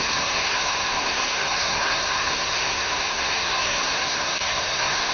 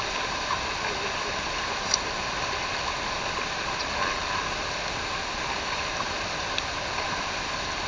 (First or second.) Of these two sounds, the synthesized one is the first